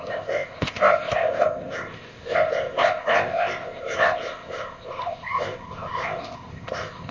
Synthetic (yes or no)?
yes